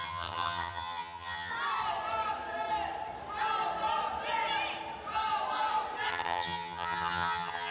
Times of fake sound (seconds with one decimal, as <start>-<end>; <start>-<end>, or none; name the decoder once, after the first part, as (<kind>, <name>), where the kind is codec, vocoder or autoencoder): 0.0-1.5 (vocoder, HiFi-GAN); 6.1-7.7